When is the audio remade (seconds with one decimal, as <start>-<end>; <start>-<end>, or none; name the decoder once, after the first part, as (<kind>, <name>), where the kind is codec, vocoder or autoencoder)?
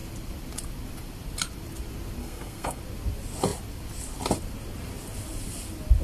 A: 2.2-2.8 (codec, SNAC)